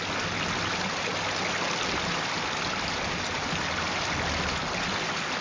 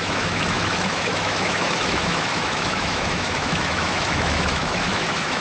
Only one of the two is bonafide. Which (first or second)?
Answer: first